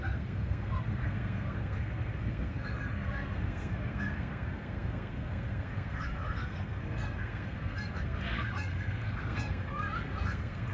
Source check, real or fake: fake